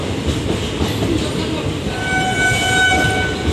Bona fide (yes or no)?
yes